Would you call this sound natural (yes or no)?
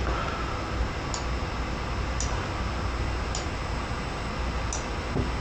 yes